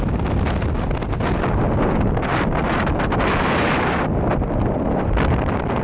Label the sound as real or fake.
real